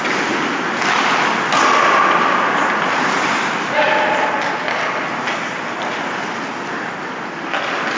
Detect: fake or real real